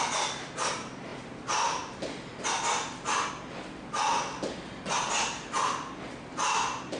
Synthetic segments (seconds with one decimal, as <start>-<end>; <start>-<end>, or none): none